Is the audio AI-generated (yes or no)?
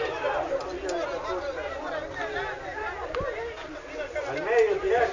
no